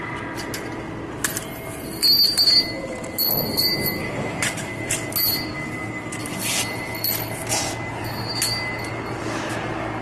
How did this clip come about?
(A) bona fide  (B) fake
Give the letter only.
A